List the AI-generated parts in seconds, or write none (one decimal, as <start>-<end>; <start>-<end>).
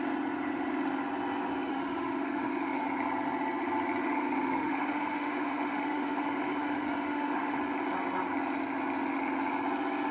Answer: 1.7-2.8; 4.0-7.6